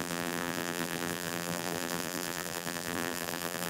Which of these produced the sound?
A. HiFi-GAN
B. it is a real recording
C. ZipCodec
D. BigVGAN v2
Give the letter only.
D